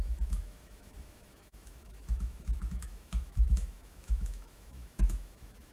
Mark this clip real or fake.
fake